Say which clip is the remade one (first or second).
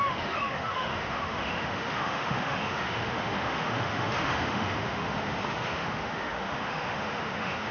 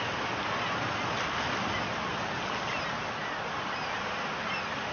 first